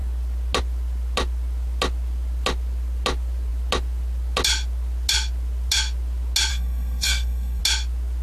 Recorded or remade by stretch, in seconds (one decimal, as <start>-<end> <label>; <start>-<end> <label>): 0.0-6.5 recorded; 6.5-7.6 remade; 7.6-8.2 recorded